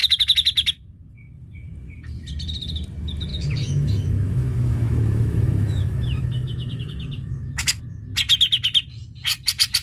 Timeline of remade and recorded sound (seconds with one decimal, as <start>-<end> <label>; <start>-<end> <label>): 0.0-3.3 recorded; 3.3-7.8 remade; 7.8-9.8 recorded